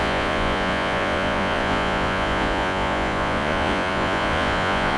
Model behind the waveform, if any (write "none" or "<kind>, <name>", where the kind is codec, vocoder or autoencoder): vocoder, Vocos